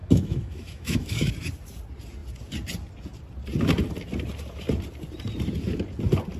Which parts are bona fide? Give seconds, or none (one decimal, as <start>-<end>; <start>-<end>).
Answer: 1.3-6.4